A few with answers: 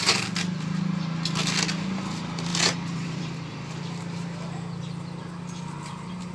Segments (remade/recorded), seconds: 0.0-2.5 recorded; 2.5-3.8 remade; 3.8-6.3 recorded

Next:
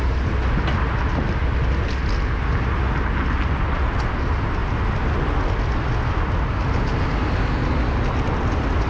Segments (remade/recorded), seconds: 0.0-8.9 recorded

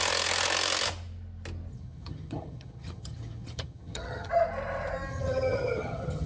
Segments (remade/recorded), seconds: 0.0-1.7 recorded; 1.7-4.3 remade; 4.3-5.1 recorded; 5.1-6.3 remade

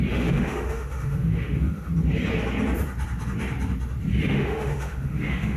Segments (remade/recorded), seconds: 0.0-1.9 remade; 1.9-4.1 recorded; 4.1-5.6 remade

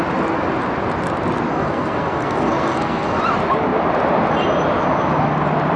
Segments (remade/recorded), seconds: 0.0-1.5 recorded; 1.5-3.2 remade; 3.2-5.8 recorded

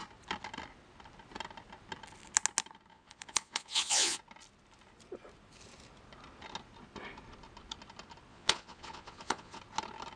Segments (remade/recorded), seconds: 0.0-2.9 recorded; 2.9-4.2 remade; 4.2-8.3 recorded; 8.3-9.6 remade; 9.6-10.2 recorded

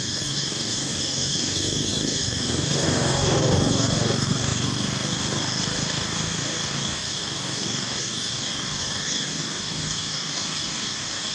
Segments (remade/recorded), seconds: 0.0-11.3 remade

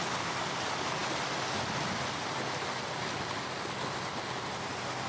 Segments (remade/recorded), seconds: 0.0-5.1 recorded